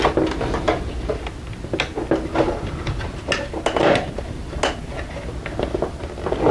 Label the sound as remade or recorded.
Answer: recorded